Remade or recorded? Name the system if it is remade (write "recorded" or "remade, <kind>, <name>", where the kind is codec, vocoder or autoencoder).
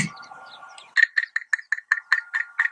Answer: recorded